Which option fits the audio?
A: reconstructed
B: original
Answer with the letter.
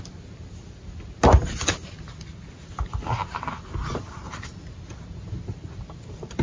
B